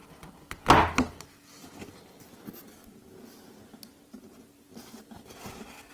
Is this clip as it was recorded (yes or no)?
yes